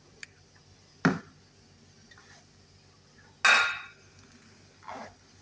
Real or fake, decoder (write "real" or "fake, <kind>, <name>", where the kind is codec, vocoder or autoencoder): real